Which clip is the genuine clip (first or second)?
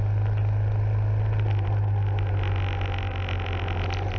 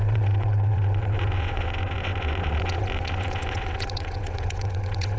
first